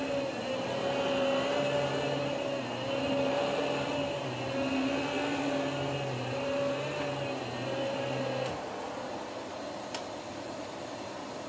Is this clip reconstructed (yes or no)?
no